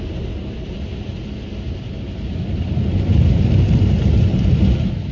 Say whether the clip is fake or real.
real